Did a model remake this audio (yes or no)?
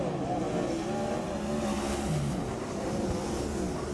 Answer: no